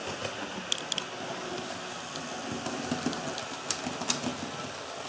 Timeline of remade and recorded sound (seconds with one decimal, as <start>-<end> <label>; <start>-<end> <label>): 0.0-5.1 recorded